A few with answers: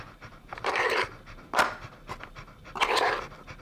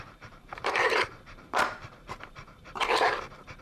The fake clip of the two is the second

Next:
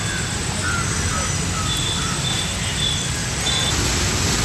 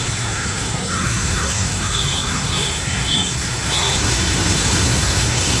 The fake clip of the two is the second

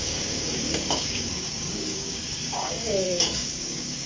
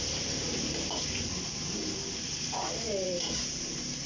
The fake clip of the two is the first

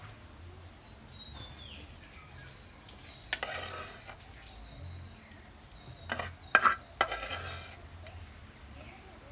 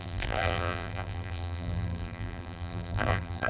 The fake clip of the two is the second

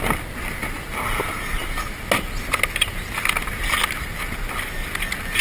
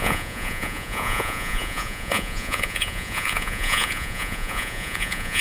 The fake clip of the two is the second